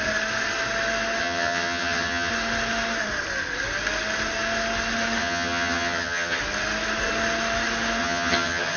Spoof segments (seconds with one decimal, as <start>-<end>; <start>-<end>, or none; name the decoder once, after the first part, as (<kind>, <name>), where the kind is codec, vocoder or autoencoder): 1.2-2.3 (vocoder, HiFi-GAN); 5.2-6.4; 8.0-8.8